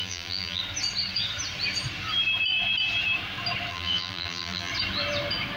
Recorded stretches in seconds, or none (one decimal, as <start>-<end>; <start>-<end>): 0.6-3.7; 4.7-5.6